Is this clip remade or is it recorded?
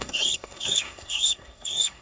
remade